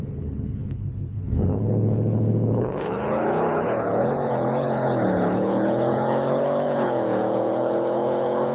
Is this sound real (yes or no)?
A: no